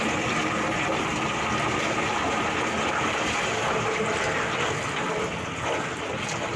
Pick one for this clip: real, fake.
real